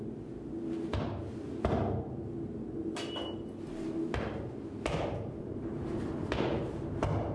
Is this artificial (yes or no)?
no